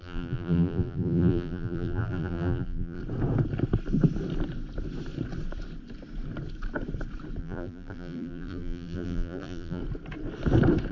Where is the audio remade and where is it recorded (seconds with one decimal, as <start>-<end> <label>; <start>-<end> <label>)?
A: 0.0-3.0 remade; 3.0-7.4 recorded; 7.4-9.8 remade; 9.8-10.9 recorded